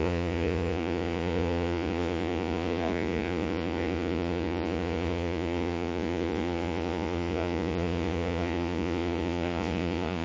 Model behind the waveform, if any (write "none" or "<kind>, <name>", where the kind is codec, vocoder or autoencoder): vocoder, Vocos